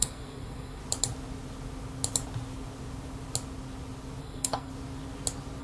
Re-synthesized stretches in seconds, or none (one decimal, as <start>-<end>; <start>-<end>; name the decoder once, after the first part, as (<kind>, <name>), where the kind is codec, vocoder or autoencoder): 0.0-0.8 (codec, SNAC); 4.2-4.7